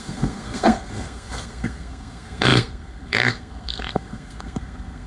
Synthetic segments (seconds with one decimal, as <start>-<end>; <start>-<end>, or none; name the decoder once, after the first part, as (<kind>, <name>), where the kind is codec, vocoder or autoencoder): 0.0-5.1 (codec, SNAC)

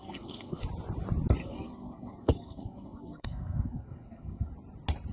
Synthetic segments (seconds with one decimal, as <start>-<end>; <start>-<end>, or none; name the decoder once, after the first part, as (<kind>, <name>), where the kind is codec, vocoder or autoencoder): 0.0-0.6 (codec, SNAC); 1.4-4.5

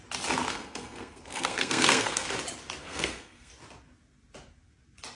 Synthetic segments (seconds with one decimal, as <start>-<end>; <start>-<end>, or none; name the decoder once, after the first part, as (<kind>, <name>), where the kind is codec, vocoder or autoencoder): 0.5-2.3 (codec, SNAC); 2.8-3.5

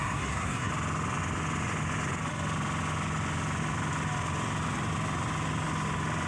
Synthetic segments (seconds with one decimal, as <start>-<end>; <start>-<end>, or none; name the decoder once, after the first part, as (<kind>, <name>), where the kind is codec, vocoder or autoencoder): 0.0-0.7 (codec, SNAC)

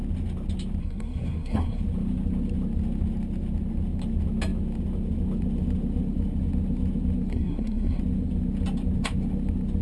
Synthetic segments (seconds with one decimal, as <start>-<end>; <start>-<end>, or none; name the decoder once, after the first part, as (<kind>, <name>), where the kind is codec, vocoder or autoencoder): 0.8-1.8 (codec, SNAC); 7.3-8.0

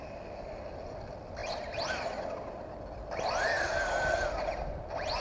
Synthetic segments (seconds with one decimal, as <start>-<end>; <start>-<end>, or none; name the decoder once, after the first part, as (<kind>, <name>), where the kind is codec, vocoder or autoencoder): none